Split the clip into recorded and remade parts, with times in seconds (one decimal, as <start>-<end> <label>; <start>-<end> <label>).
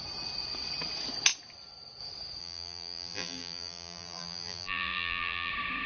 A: 0.0-2.4 recorded; 2.4-5.5 remade; 5.5-5.9 recorded